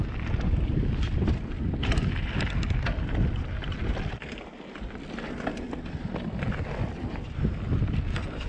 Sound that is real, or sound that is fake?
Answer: real